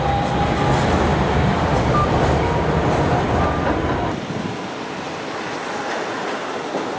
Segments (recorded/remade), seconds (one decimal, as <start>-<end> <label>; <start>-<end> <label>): 0.0-7.0 recorded